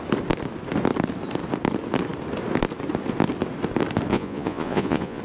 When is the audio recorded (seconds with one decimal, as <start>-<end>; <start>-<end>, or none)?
0.0-4.1